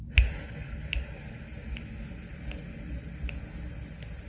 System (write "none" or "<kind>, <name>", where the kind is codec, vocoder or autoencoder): none